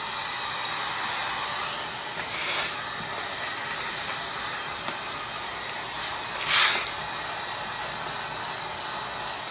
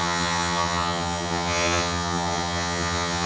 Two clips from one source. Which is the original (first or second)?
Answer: first